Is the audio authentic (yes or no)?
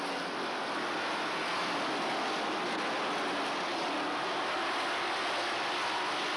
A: yes